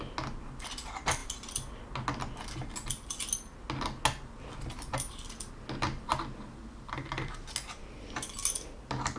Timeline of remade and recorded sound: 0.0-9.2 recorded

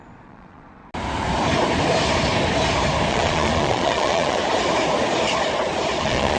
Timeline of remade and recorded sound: 0.0-0.8 remade; 0.8-3.1 recorded; 3.1-4.4 remade; 4.4-6.0 recorded; 6.0-6.4 remade

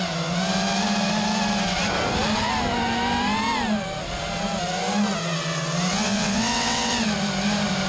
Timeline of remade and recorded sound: 0.0-5.9 recorded; 5.9-6.9 remade; 6.9-7.9 recorded

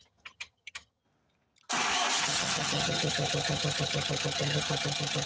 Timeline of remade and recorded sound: 0.0-1.0 remade; 1.0-2.2 recorded; 2.2-5.3 remade

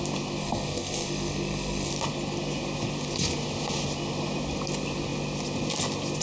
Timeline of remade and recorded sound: 0.0-0.4 recorded; 0.4-1.9 remade; 1.9-6.2 recorded

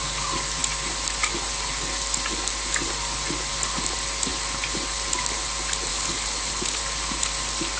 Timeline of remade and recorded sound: 0.0-5.9 recorded; 5.9-6.8 remade; 6.8-7.8 recorded